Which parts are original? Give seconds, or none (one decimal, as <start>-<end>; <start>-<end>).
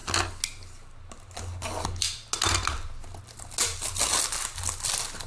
0.0-5.3